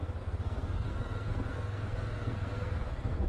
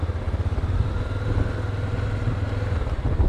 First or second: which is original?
second